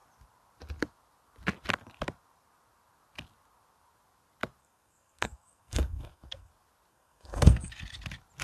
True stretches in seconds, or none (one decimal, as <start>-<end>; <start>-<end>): 0.0-4.6; 6.5-6.9; 7.7-8.4